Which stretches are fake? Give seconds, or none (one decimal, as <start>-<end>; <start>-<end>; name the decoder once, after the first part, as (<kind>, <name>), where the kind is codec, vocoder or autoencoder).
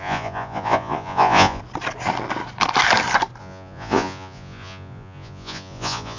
0.0-1.6 (vocoder, Vocos); 3.4-6.2